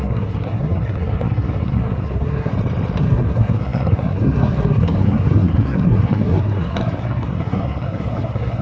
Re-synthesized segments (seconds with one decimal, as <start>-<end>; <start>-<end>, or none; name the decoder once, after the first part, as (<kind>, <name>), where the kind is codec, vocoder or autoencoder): 0.0-2.5 (codec, SNAC); 3.0-8.6